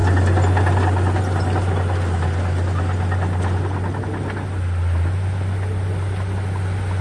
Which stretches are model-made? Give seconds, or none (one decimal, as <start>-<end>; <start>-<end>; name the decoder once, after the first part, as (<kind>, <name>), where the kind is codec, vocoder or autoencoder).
none